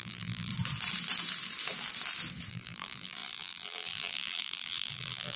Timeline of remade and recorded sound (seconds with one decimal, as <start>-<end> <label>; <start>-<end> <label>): 0.0-0.5 remade; 0.5-2.5 recorded; 2.5-5.4 remade